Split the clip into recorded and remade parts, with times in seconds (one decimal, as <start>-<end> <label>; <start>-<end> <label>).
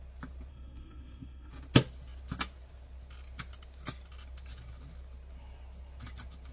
0.0-0.5 recorded; 0.5-1.5 remade; 1.5-6.5 recorded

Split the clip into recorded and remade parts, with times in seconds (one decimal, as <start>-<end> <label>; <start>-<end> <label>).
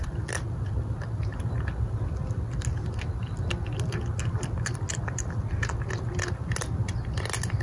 0.0-7.6 recorded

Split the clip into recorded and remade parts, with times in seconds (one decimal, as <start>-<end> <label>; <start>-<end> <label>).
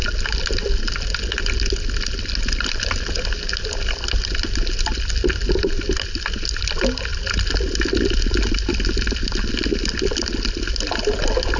0.0-11.6 recorded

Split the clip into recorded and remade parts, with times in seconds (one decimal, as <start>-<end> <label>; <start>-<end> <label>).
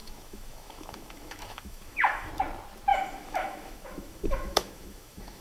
0.0-2.3 remade; 2.3-2.9 recorded; 2.9-5.4 remade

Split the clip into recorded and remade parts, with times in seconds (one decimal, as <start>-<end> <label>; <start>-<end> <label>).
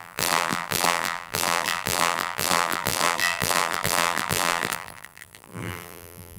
0.0-6.4 remade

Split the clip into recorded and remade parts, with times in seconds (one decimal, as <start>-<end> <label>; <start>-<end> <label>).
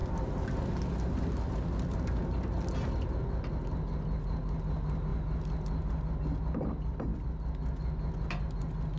0.0-9.0 recorded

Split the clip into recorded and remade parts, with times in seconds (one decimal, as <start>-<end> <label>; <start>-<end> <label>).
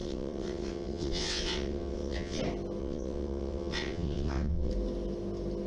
0.0-2.4 remade; 2.4-2.8 recorded; 2.8-4.7 remade; 4.7-5.7 recorded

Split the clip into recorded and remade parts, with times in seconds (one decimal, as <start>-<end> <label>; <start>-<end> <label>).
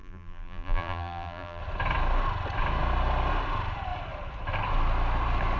0.0-1.6 remade; 1.6-5.6 recorded